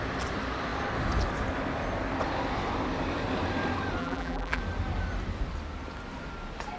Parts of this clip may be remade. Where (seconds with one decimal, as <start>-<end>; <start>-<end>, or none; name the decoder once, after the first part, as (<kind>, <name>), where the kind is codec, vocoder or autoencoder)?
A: 4.0-4.6 (vocoder, BigVGAN v2)